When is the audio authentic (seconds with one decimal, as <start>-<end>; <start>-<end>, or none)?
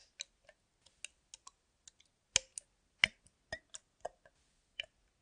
0.0-5.2